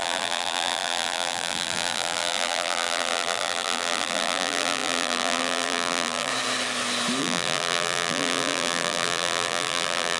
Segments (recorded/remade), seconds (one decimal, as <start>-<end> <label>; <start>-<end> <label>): 0.0-6.3 remade; 6.3-7.2 recorded; 7.2-10.2 remade